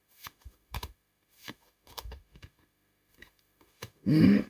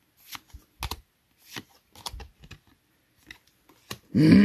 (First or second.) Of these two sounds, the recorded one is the second